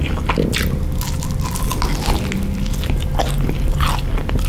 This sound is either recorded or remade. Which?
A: recorded